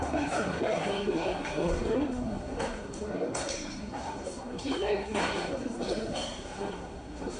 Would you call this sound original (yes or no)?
no